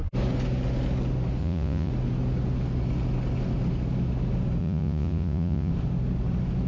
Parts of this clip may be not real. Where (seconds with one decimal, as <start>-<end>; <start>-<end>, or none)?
1.4-1.9; 4.6-5.7